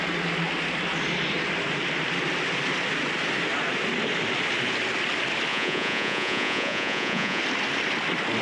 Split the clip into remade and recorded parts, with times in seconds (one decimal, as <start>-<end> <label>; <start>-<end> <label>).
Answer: 0.0-5.5 recorded; 5.5-7.4 remade; 7.4-8.4 recorded